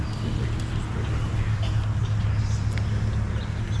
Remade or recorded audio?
recorded